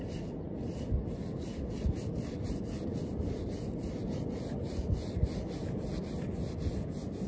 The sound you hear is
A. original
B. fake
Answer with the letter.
A